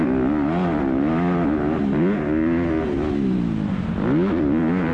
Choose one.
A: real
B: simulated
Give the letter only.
A